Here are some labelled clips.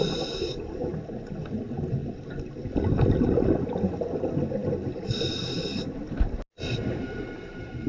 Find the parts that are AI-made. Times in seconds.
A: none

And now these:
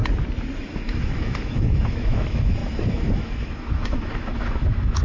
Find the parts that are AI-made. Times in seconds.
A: 0.6-5.0 (autoencoder, DAC-VAE)

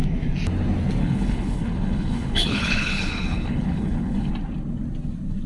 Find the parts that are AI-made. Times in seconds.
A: 1.0-4.3 (codec, HILCodec)